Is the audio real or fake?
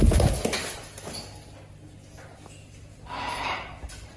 real